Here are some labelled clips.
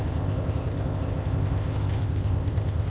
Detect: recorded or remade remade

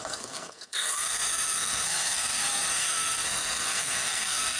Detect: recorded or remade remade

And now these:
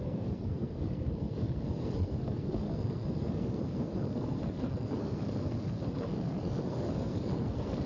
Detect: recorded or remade remade